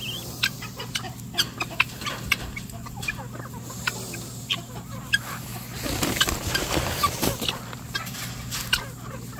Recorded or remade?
recorded